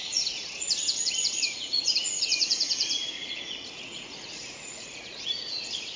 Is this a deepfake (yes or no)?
yes